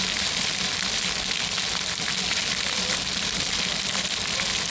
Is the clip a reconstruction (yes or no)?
no